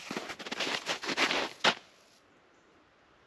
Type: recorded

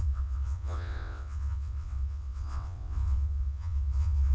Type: remade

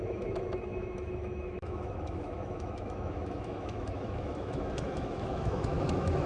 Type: remade